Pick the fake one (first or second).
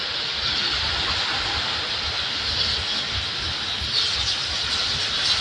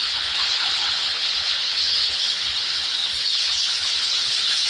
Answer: second